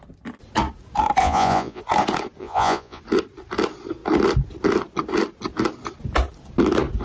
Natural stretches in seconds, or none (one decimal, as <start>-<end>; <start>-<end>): 0.0-1.2; 1.8-2.4; 3.0-7.0